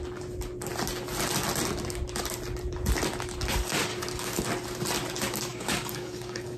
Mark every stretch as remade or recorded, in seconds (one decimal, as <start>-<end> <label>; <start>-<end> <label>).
0.0-3.9 recorded; 3.9-4.4 remade; 4.4-5.5 recorded; 5.5-6.6 remade